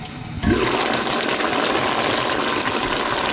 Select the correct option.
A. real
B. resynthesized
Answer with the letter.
A